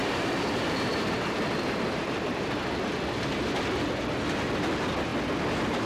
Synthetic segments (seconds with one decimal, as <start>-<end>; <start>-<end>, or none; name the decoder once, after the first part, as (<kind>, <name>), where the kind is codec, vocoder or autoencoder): 0.0-2.6 (vocoder, BigVGAN v2)